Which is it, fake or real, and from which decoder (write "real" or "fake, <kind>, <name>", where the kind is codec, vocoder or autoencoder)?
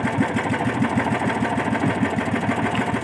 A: real